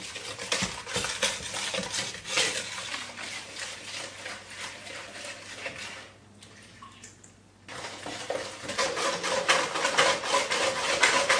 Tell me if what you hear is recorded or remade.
recorded